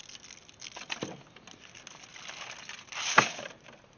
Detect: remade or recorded recorded